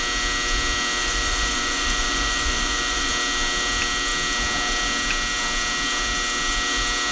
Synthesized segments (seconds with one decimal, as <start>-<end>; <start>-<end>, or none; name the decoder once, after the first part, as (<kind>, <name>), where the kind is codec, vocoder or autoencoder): 1.0-3.1 (vocoder, Vocos)